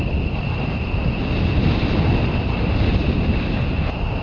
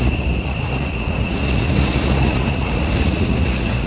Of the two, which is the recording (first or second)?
first